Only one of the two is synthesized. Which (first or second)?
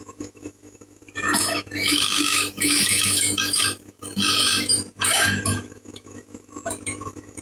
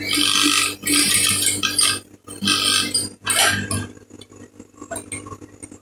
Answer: first